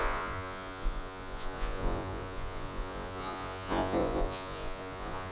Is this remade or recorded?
remade